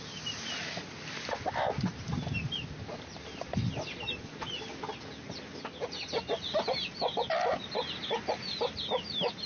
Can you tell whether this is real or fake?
real